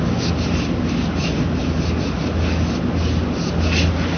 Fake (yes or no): no